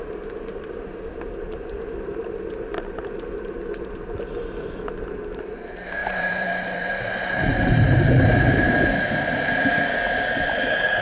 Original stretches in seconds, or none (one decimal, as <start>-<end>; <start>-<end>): 0.0-6.0; 8.7-11.0